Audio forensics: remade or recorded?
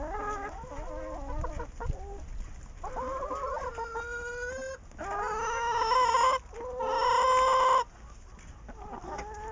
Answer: recorded